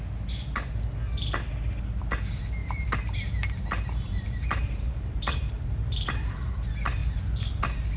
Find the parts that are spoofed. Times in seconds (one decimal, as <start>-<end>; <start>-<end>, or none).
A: 2.6-6.5; 7.0-7.6